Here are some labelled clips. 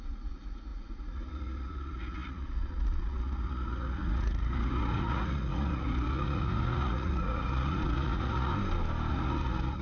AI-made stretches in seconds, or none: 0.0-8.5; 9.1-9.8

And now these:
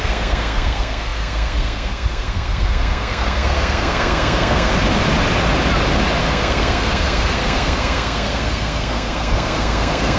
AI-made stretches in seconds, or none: 0.0-4.7; 6.2-10.2

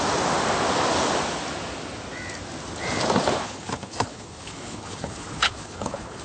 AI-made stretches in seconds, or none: 3.4-6.2

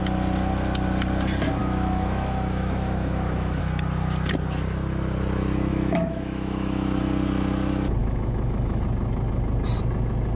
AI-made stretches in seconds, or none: 1.6-3.6; 5.7-7.0; 8.0-8.8

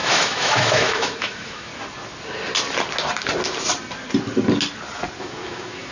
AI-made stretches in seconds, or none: 0.0-1.7; 5.2-5.9

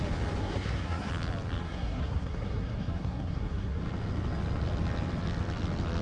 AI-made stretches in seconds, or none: 0.4-1.1; 1.6-3.8

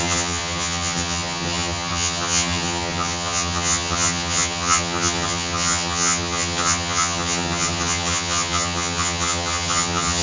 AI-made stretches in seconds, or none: 0.0-10.2